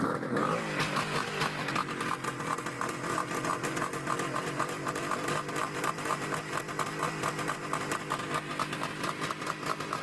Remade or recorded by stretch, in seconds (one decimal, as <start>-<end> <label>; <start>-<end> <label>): 0.0-3.5 recorded; 3.5-8.0 remade; 8.0-10.0 recorded